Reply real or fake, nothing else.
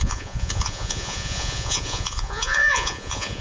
fake